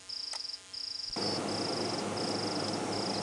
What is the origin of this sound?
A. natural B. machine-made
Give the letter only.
A